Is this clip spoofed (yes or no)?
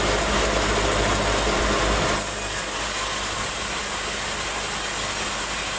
no